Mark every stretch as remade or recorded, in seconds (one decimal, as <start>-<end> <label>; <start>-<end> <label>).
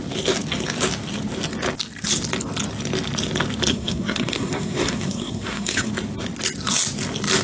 0.0-3.7 recorded; 3.7-5.9 remade; 5.9-7.4 recorded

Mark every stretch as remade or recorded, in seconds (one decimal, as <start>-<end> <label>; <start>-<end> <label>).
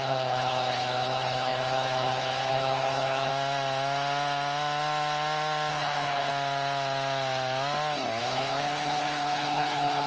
0.0-3.3 remade; 3.3-5.7 recorded; 5.7-6.3 remade; 6.3-8.2 recorded; 8.2-10.1 remade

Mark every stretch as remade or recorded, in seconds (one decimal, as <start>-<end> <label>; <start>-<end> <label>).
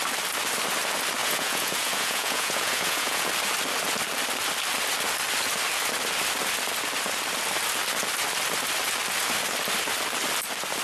0.0-1.2 recorded; 1.2-3.3 remade; 3.3-10.8 recorded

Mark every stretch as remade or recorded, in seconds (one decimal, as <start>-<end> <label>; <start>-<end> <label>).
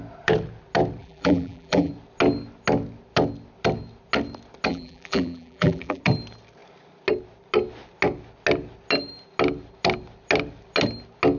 0.0-1.0 recorded; 1.0-1.9 remade; 1.9-4.7 recorded; 4.7-6.0 remade; 6.0-11.4 recorded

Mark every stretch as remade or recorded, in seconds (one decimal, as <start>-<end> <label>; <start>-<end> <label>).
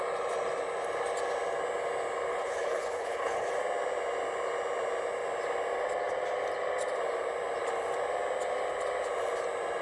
0.0-2.3 recorded; 2.3-3.5 remade; 3.5-9.8 recorded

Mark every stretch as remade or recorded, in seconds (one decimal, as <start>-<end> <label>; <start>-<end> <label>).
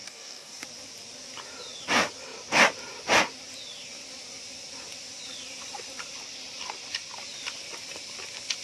0.0-0.6 remade; 0.6-8.6 recorded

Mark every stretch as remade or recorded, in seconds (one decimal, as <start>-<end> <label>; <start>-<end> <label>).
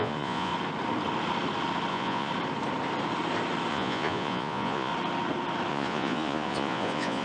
0.0-0.5 remade; 0.5-1.9 recorded; 1.9-2.3 remade; 2.3-3.7 recorded; 3.7-4.9 remade; 4.9-5.7 recorded; 5.7-7.2 remade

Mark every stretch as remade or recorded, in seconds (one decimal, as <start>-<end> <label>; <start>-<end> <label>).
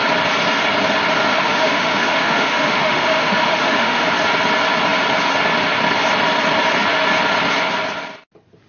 0.0-1.3 recorded; 1.3-4.1 remade; 4.1-8.7 recorded